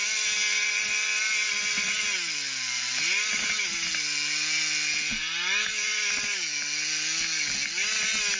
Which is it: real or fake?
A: real